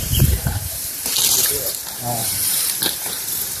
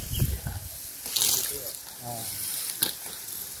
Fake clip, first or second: first